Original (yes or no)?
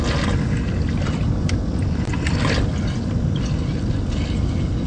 yes